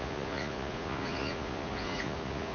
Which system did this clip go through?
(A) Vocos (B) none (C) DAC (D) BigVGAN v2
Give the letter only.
A